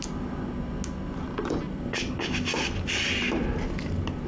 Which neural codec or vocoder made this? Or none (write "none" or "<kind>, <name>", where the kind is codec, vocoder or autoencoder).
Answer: none